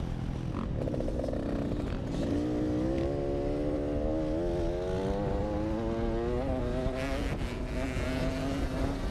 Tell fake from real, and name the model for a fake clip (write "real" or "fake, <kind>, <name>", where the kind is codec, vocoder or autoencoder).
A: real